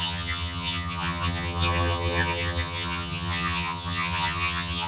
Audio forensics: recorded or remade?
remade